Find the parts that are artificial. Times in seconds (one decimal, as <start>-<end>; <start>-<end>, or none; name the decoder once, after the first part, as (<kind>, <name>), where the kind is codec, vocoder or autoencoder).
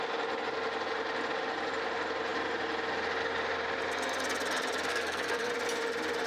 4.9-5.5 (codec, SNAC)